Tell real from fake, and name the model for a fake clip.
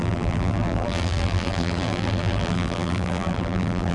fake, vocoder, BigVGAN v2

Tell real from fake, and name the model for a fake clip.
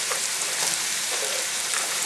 fake, vocoder, BigVGAN v2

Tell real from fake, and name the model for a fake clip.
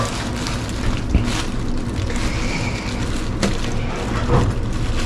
real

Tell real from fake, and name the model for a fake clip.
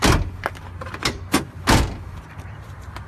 real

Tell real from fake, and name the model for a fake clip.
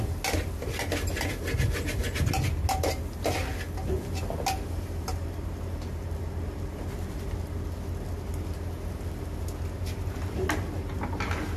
real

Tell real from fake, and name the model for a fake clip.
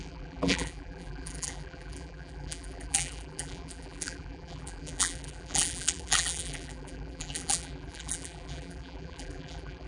fake, vocoder, BigVGAN v2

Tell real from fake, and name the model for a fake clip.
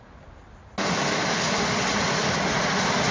real